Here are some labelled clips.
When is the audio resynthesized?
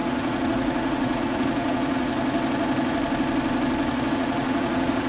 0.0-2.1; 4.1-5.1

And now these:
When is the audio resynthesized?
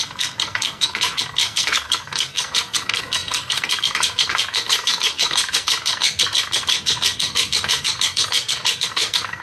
0.0-9.4